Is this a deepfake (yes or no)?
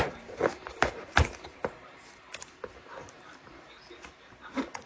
yes